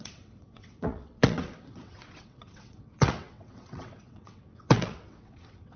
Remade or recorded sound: remade